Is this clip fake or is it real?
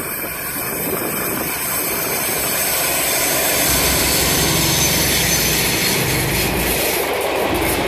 fake